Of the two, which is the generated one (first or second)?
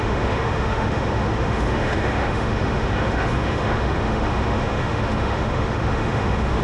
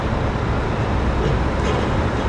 first